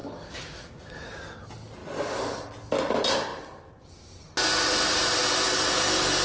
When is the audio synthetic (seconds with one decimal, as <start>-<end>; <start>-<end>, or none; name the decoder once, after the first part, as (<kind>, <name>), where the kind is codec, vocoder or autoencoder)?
0.0-1.2 (autoencoder, DAC-VAE)